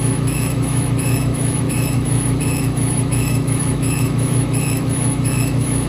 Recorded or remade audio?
remade